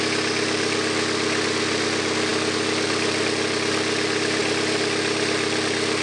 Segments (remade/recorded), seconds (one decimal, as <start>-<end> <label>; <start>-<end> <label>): 0.0-6.0 recorded